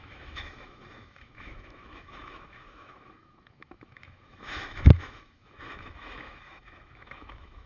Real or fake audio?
fake